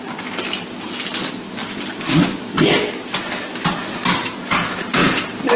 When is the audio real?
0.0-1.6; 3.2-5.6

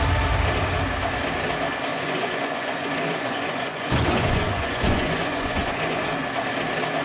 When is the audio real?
0.0-1.9; 6.1-7.0

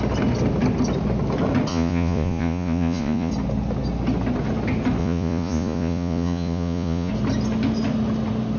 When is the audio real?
0.0-1.7; 3.3-5.0; 7.1-8.6

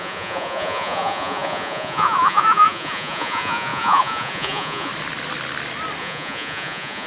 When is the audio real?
4.9-6.0

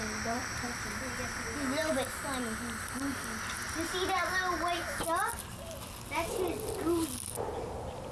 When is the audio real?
0.0-8.1